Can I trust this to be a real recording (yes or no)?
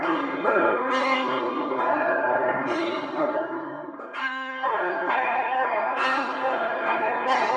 no